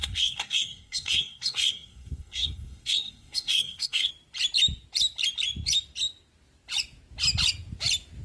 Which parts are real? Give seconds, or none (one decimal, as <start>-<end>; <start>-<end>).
4.1-8.2